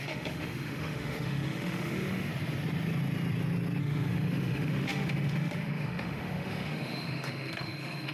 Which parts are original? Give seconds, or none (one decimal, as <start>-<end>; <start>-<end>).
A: 2.3-3.8